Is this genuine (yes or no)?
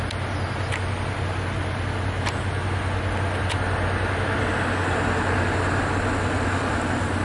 yes